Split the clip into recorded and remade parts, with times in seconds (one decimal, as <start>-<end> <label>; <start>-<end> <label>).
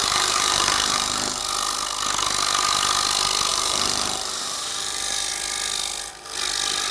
0.0-1.4 remade; 1.4-3.5 recorded; 3.5-5.3 remade; 5.3-6.9 recorded